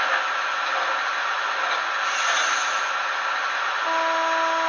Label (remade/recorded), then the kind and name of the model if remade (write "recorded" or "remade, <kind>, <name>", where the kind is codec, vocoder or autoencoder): recorded